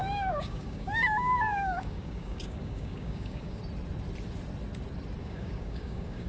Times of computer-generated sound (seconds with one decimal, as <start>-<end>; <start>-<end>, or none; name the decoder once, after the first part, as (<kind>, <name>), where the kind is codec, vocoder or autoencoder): 0.0-3.6 (codec, DAC); 5.2-6.3